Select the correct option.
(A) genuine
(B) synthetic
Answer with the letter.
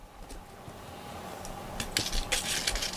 A